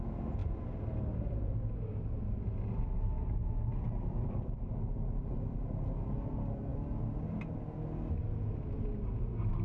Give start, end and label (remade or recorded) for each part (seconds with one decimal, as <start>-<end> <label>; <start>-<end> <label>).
0.0-0.4 recorded; 0.4-1.6 remade; 1.6-3.4 recorded; 3.4-4.7 remade; 4.7-9.6 recorded